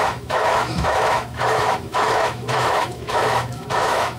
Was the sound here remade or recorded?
remade